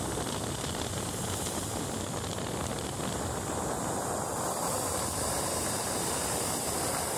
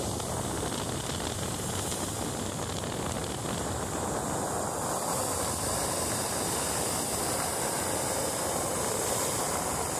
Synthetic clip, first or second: first